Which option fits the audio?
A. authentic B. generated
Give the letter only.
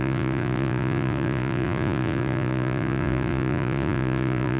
B